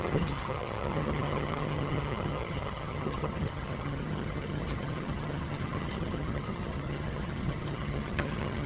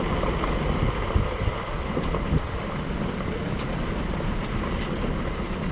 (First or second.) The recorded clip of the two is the second